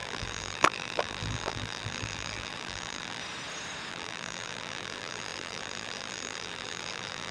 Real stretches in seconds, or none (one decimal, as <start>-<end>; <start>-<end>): 3.2-3.9